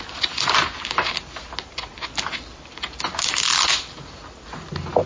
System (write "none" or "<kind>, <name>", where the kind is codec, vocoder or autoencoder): none